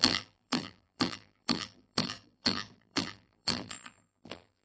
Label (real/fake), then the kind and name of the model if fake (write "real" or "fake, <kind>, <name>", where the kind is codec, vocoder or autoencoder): fake, vocoder, BigVGAN v2